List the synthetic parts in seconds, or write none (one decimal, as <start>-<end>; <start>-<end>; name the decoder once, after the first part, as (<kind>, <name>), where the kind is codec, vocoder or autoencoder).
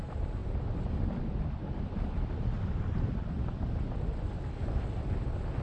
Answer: none